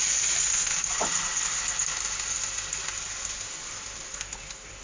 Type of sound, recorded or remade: recorded